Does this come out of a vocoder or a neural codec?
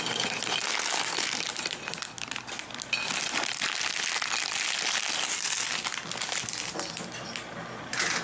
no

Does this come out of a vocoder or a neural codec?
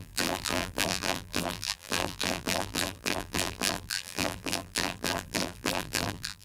yes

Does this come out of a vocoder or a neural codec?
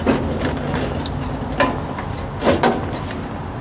no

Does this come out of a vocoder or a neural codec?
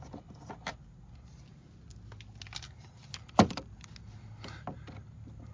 no